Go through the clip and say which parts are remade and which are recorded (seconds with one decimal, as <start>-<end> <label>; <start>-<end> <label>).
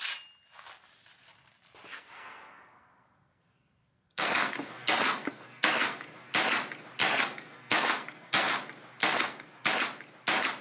0.0-1.9 recorded; 1.9-6.3 remade; 6.3-7.0 recorded; 7.0-8.5 remade; 8.5-9.0 recorded; 9.0-9.7 remade; 9.7-10.6 recorded